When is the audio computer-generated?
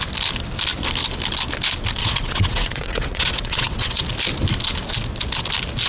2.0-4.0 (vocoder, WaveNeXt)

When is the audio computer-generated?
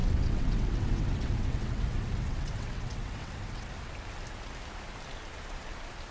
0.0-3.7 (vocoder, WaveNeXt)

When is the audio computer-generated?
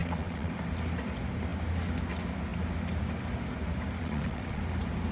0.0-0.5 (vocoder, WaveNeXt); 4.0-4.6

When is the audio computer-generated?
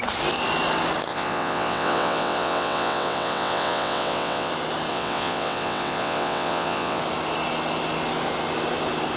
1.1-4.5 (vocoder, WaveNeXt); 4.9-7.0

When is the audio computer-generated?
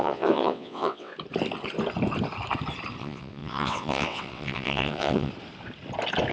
0.0-1.1 (vocoder, WaveNeXt); 3.0-5.3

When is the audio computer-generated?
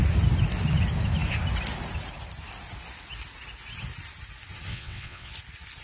4.7-5.3 (vocoder, WaveNeXt)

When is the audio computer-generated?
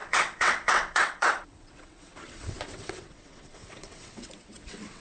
0.0-5.0 (vocoder, WaveNeXt)